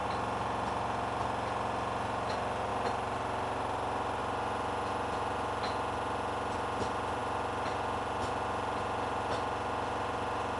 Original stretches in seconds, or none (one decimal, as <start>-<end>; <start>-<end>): 0.0-10.6